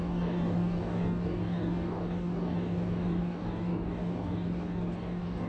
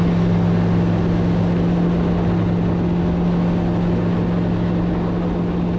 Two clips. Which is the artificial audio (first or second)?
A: first